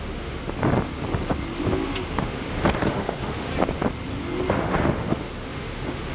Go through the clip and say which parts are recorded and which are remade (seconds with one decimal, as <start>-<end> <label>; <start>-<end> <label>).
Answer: 0.0-0.4 remade; 0.4-2.2 recorded; 2.2-3.5 remade; 3.5-4.5 recorded; 4.5-6.1 remade

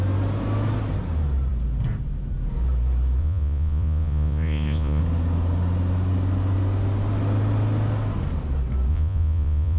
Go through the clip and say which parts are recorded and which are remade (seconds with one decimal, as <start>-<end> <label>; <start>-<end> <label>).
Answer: 0.0-3.2 recorded; 3.2-5.0 remade; 5.0-8.9 recorded; 8.9-9.8 remade

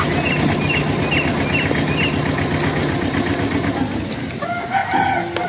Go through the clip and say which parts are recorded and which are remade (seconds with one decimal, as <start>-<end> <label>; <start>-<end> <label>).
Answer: 0.0-5.5 recorded